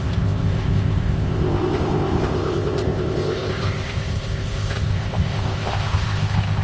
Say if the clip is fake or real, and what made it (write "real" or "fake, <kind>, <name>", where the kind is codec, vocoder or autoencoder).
fake, codec, ZipCodec